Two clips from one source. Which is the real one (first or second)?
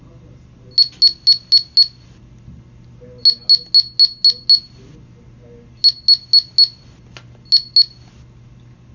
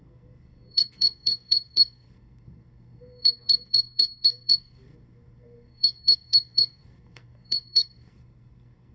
first